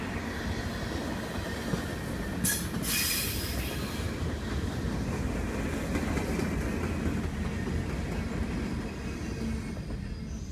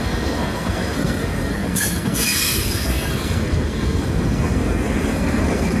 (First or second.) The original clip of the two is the first